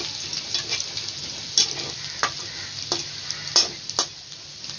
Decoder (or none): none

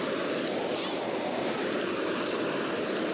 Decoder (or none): none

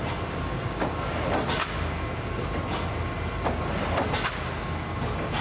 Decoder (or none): none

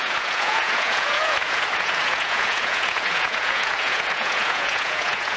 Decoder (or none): vocoder, Vocos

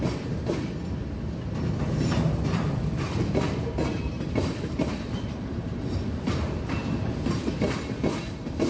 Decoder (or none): none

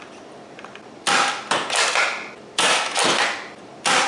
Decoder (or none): vocoder, BigVGAN v2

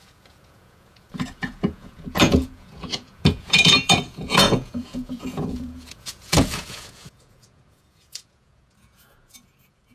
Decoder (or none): vocoder, Vocos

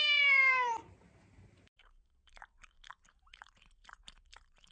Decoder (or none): vocoder, BigVGAN v2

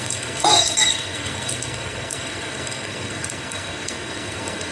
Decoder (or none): codec, SNAC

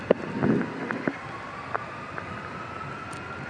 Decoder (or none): none